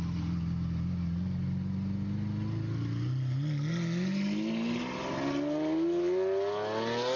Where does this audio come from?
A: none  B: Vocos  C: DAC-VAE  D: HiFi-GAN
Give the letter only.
A